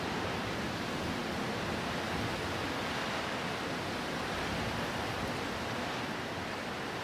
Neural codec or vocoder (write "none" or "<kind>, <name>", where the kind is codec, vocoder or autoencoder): none